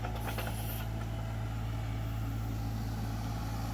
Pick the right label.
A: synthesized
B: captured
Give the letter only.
B